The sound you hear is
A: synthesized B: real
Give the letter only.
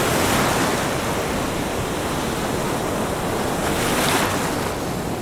B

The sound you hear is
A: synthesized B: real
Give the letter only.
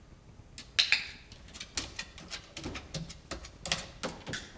B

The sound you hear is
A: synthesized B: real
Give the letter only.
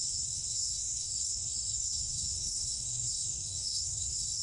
A